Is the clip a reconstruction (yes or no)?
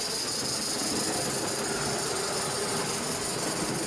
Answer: no